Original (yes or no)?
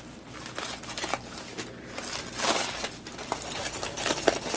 yes